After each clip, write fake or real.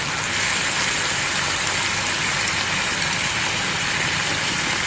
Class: real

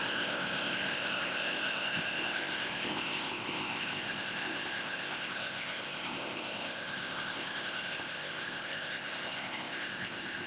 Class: fake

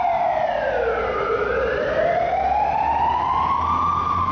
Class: real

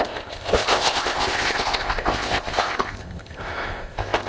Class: fake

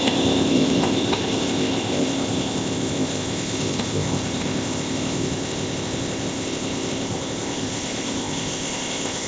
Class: fake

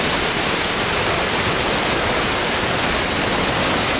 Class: real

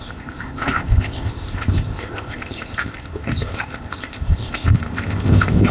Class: fake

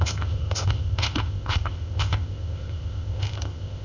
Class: fake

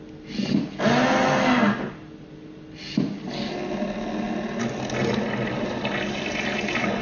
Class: real